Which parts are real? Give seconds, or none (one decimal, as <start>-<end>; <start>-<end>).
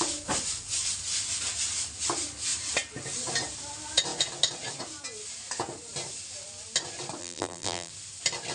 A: 0.0-7.2; 7.9-8.5